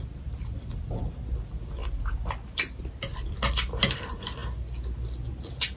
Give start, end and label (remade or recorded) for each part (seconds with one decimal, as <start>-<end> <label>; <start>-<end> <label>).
0.0-1.8 remade; 1.8-2.8 recorded; 2.8-4.4 remade; 4.4-5.8 recorded